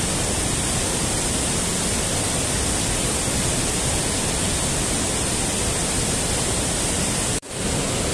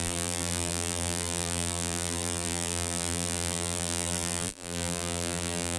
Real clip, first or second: first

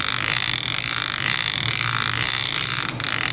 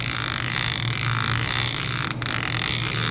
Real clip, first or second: second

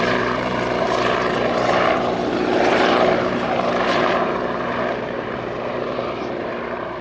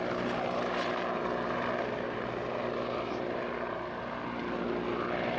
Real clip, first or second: second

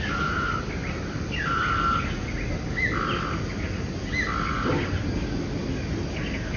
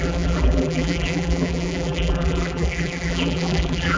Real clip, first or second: first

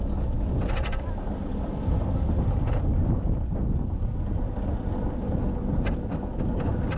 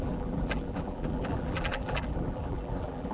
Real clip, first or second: first